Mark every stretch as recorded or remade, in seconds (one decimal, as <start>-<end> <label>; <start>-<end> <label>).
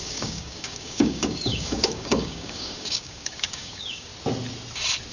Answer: 0.0-4.1 remade; 4.1-5.1 recorded